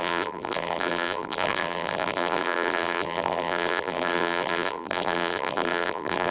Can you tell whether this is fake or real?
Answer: fake